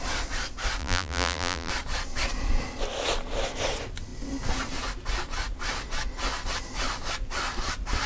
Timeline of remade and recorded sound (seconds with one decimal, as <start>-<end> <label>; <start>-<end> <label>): 0.0-0.8 recorded; 0.8-1.7 remade; 1.7-8.1 recorded